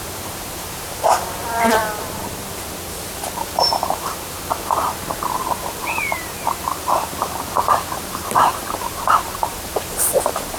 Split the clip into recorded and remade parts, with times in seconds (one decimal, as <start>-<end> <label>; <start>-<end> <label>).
0.0-1.8 remade; 1.8-3.0 recorded; 3.0-9.4 remade; 9.4-10.2 recorded; 10.2-10.6 remade